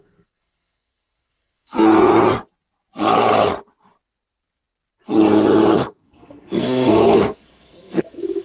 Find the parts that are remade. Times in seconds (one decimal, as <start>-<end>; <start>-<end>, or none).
0.0-2.1; 5.7-8.4